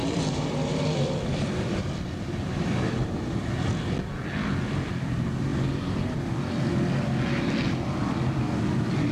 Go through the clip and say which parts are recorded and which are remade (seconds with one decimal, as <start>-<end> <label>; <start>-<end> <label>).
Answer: 0.0-3.5 remade; 3.5-9.1 recorded